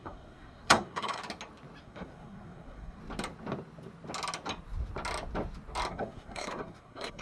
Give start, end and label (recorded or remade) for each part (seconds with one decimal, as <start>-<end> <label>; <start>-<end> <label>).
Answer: 0.0-1.2 remade; 1.2-1.8 recorded; 1.8-3.0 remade; 3.0-5.9 recorded; 5.9-7.2 remade